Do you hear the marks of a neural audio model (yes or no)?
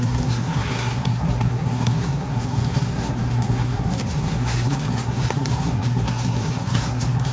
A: yes